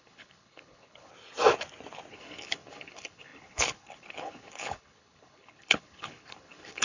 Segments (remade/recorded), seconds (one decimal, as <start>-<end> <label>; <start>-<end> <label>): 0.0-1.1 remade; 1.1-2.1 recorded; 2.1-6.8 remade